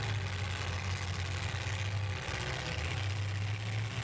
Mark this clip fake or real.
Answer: real